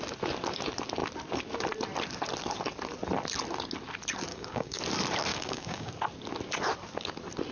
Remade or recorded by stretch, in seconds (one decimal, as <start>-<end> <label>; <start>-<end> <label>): 0.0-4.3 recorded; 4.3-4.8 remade; 4.8-5.3 recorded; 5.3-5.9 remade; 5.9-7.5 recorded